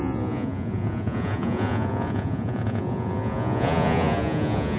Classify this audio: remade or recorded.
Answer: remade